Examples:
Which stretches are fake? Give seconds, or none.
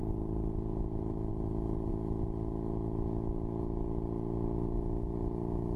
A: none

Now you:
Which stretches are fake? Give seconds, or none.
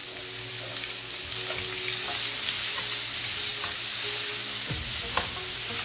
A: none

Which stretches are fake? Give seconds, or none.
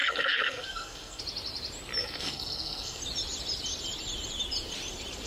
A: 0.0-1.2; 2.0-3.0